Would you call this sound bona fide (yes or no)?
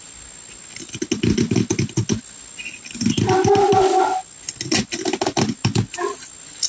yes